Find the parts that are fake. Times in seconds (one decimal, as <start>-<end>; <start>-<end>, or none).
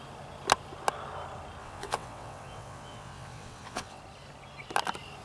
1.6-4.0